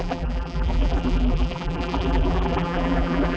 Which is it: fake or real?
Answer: fake